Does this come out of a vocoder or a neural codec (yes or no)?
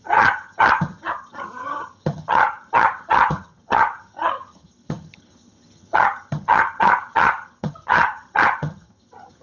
yes